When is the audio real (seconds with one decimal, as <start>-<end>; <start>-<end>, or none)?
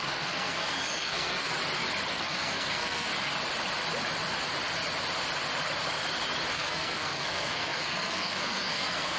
1.5-2.1; 3.1-6.5